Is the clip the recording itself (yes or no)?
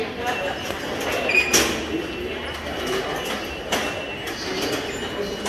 yes